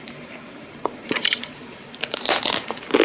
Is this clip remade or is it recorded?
remade